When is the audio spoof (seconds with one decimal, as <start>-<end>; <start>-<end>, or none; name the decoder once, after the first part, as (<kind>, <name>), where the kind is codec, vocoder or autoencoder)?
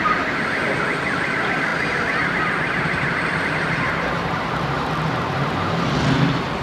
none